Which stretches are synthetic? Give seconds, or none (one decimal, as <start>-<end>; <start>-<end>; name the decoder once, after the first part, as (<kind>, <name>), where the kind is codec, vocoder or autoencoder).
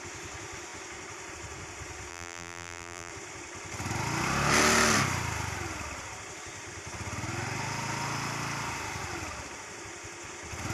2.1-3.1 (vocoder, BigVGAN v2)